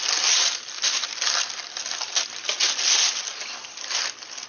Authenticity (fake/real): real